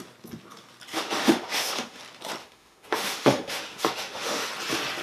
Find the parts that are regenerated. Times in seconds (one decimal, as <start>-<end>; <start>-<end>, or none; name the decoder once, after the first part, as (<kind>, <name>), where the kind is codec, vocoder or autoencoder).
0.9-2.0 (autoencoder, DAC-VAE); 2.4-4.5